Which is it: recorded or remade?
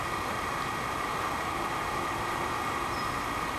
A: recorded